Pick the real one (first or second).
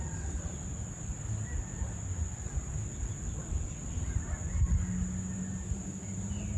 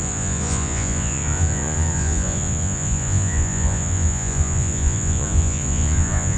first